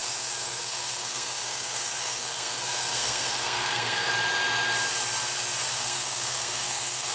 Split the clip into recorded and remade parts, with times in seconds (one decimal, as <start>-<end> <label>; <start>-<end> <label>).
0.0-4.1 remade; 4.1-5.7 recorded; 5.7-7.1 remade